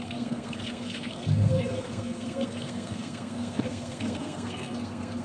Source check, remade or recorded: remade